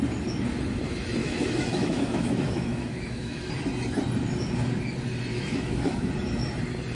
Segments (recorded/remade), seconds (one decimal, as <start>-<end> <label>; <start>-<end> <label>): 0.0-1.2 recorded; 1.2-3.5 remade; 3.5-5.3 recorded; 5.3-6.1 remade; 6.1-6.9 recorded